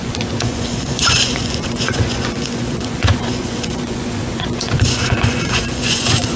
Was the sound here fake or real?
fake